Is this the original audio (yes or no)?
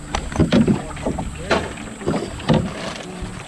yes